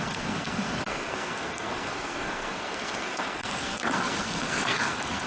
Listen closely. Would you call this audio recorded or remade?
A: remade